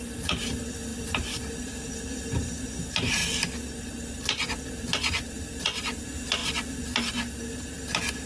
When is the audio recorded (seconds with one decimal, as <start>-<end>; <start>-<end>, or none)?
0.0-8.3